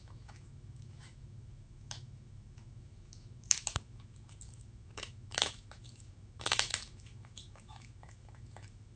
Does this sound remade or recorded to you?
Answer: remade